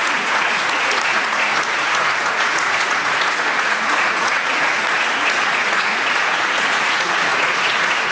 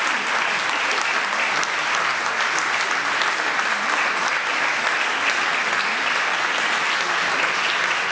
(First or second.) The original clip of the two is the second